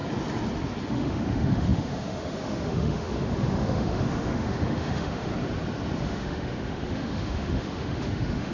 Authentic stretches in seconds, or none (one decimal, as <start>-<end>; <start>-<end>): 0.0-0.9; 5.3-6.0